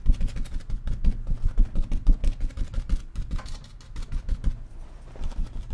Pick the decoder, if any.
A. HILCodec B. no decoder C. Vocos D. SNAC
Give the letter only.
B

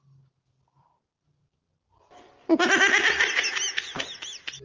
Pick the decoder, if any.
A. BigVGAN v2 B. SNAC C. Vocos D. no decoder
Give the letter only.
D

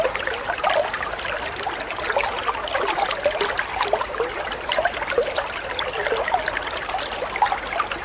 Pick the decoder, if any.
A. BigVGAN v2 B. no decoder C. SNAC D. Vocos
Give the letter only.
B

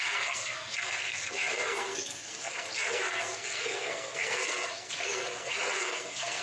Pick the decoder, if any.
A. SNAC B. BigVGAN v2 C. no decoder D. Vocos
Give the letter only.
A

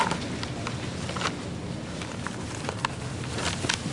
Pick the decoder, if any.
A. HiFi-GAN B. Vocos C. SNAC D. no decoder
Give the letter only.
D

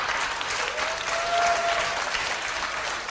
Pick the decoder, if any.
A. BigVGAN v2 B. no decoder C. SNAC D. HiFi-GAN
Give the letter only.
B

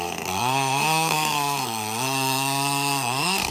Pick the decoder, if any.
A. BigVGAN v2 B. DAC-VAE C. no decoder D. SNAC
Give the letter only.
D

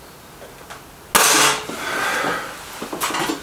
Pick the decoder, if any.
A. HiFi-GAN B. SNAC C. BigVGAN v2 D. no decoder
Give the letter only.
D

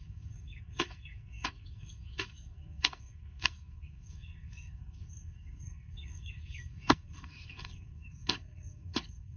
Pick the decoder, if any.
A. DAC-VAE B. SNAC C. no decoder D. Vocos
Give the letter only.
B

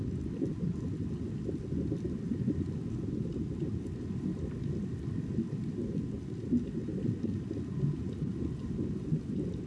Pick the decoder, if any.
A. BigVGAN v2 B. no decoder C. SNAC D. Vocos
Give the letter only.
B